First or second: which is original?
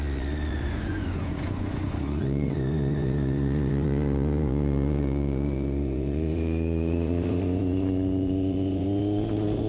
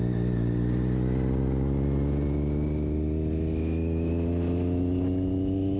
second